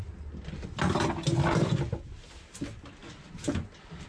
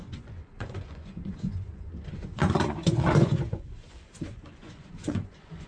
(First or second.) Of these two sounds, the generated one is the second